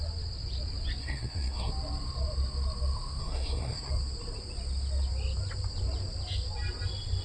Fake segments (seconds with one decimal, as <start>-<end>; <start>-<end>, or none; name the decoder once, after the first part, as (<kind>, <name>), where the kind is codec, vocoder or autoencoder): 1.0-1.7 (codec, SNAC); 3.2-3.9